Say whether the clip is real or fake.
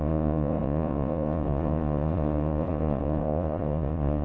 fake